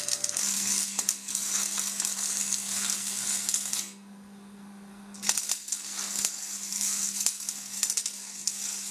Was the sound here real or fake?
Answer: fake